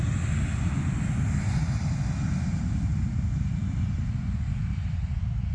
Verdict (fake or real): real